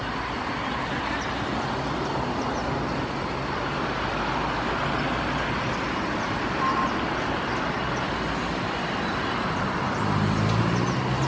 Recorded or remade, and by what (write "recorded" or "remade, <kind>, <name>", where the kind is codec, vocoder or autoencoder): recorded